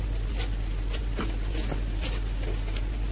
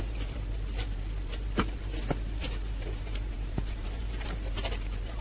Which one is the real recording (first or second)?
first